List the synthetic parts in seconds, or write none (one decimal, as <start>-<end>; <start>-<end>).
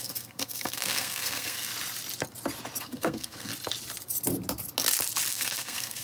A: 0.0-1.7; 2.8-3.5; 5.3-6.0